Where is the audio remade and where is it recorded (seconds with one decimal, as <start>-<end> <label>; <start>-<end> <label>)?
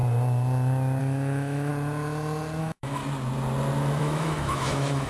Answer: 0.0-1.0 recorded; 1.0-1.7 remade; 1.7-2.6 recorded; 2.6-3.0 remade; 3.0-4.0 recorded; 4.0-5.1 remade